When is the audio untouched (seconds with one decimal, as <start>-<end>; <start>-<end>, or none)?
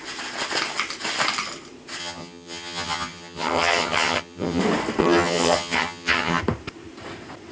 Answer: 0.0-2.0; 4.6-5.0; 6.4-7.5